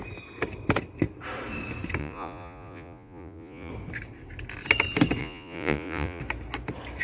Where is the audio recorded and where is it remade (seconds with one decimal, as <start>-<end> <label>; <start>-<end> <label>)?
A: 0.0-2.0 recorded; 2.0-3.7 remade; 3.7-5.2 recorded; 5.2-6.2 remade; 6.2-7.0 recorded